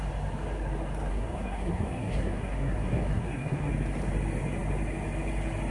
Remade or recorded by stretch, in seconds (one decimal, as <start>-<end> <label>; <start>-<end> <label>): 0.0-1.1 recorded; 1.1-3.7 remade; 3.7-5.7 recorded